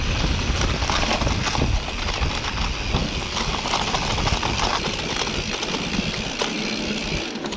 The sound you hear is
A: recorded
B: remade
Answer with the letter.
A